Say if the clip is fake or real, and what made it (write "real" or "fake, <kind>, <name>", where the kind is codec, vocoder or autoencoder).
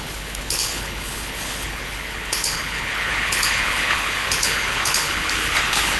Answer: fake, codec, HILCodec